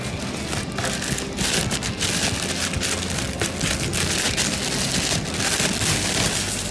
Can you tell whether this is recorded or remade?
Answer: recorded